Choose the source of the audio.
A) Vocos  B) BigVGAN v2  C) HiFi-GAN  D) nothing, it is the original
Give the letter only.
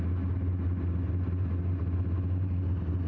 D